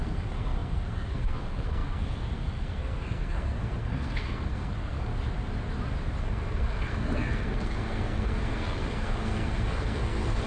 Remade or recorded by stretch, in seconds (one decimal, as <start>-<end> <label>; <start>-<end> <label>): 0.0-5.1 remade; 5.1-6.2 recorded; 6.2-10.5 remade